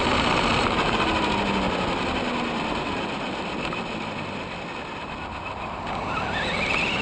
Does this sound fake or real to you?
real